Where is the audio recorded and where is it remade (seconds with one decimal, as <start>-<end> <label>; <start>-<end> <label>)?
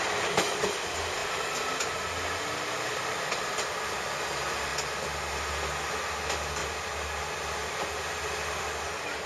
0.0-9.3 recorded